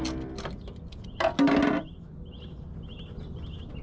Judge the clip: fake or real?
real